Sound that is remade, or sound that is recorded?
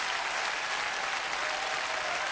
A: recorded